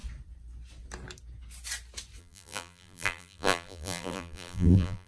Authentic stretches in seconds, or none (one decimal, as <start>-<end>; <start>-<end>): 0.0-2.2